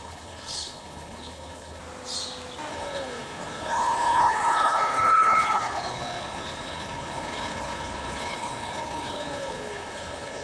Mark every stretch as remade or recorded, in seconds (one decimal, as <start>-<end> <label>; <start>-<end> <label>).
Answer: 0.0-1.8 remade; 1.8-2.7 recorded; 2.7-10.4 remade